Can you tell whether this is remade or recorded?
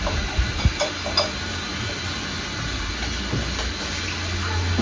recorded